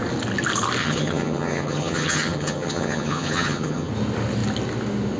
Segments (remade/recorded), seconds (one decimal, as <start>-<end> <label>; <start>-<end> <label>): 0.0-0.8 recorded; 0.8-3.9 remade; 3.9-5.2 recorded